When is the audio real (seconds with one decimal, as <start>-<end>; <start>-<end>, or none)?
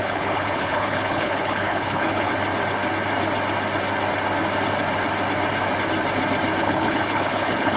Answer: 2.3-6.6